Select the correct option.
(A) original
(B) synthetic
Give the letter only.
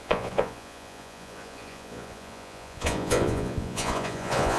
B